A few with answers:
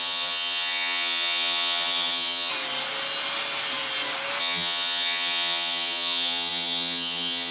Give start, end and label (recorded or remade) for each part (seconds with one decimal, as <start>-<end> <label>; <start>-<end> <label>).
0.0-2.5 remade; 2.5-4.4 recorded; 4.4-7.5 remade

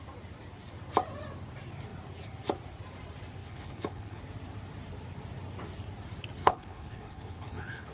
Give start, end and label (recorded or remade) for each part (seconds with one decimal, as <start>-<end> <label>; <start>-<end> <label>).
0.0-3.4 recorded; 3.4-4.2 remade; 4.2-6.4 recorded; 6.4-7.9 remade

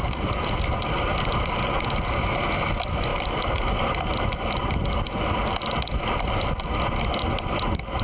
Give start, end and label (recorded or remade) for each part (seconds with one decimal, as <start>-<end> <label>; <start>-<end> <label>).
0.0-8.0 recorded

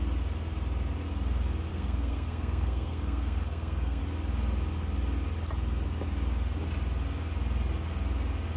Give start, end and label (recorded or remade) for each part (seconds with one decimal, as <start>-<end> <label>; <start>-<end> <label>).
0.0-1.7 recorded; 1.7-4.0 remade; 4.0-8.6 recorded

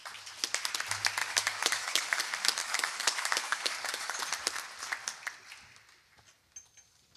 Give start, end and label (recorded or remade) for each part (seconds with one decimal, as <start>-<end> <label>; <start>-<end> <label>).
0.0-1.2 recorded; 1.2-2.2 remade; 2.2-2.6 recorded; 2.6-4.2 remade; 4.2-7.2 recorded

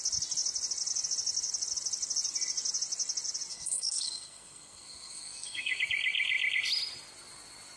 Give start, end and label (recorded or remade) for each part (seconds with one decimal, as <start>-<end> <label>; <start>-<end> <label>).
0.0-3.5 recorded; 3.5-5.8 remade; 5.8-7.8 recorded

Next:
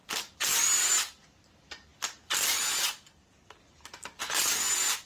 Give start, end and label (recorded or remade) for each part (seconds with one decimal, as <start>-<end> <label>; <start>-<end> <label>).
0.0-5.1 recorded